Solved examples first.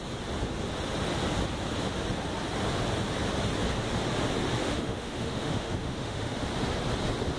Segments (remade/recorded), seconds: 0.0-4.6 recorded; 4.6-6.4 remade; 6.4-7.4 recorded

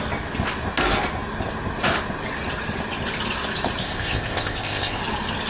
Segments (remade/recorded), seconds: 0.0-3.8 recorded; 3.8-5.0 remade; 5.0-5.5 recorded

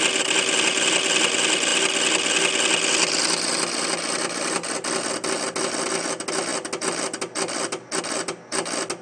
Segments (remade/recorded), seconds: 0.0-9.0 recorded